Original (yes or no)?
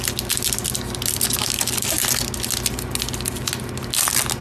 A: yes